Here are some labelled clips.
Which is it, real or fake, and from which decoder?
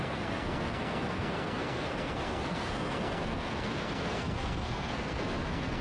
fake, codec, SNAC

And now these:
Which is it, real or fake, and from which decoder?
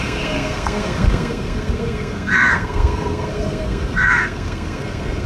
fake, codec, SNAC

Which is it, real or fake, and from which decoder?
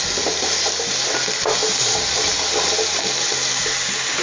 real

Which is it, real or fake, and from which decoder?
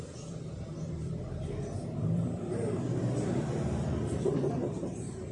fake, vocoder, BigVGAN v2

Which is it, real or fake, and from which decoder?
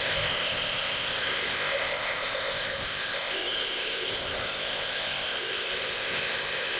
fake, codec, ZipCodec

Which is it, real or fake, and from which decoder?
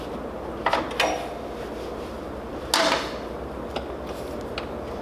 real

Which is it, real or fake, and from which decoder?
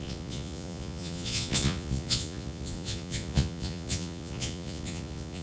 fake, vocoder, Vocos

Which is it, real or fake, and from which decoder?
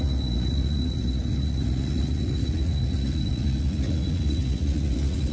fake, vocoder, Vocos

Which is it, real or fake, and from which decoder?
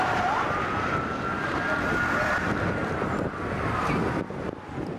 real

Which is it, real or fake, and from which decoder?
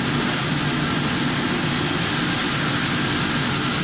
real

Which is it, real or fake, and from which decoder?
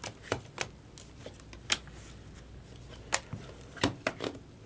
real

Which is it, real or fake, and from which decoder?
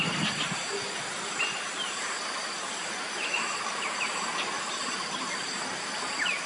real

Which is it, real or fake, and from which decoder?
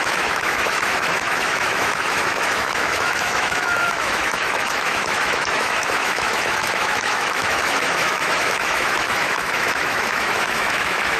fake, autoencoder, DAC-VAE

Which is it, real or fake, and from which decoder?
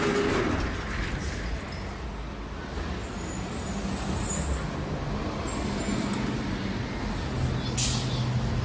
real